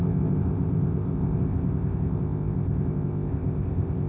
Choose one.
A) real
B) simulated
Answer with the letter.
B